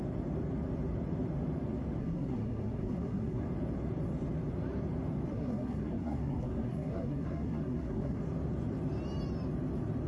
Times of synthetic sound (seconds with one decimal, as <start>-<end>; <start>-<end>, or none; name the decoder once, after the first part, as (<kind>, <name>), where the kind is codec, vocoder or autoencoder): 2.0-3.4 (codec, SNAC); 5.3-8.2